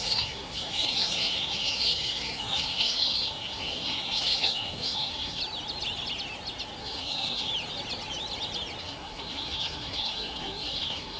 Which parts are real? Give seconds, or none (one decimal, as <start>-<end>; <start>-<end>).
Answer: 5.4-6.8; 7.5-8.8